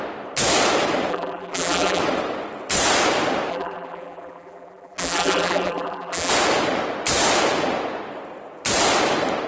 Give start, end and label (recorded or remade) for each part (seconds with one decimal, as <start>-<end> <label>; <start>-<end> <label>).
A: 0.0-1.1 recorded; 1.1-2.0 remade; 2.0-3.5 recorded; 3.5-6.3 remade; 6.3-9.5 recorded

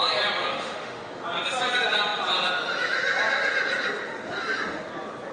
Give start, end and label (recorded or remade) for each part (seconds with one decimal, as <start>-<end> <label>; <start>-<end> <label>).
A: 0.0-0.5 recorded; 0.5-1.1 remade; 1.1-5.3 recorded

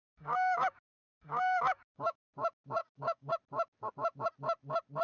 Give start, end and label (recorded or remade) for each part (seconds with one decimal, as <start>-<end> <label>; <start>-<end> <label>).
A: 0.0-2.2 remade; 2.2-2.8 recorded; 2.8-3.3 remade; 3.3-5.0 recorded

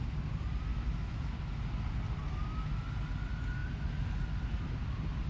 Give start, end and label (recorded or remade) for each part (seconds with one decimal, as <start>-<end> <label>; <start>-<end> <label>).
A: 0.0-0.7 recorded; 0.7-1.4 remade; 1.4-5.3 recorded